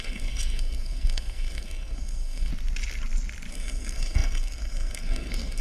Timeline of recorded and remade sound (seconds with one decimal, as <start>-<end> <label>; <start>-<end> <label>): 0.0-2.5 remade; 2.5-3.5 recorded; 3.5-5.6 remade